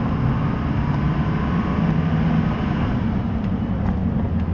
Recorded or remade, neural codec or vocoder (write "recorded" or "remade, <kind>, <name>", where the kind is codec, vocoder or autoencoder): recorded